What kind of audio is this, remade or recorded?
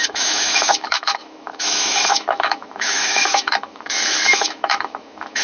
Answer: remade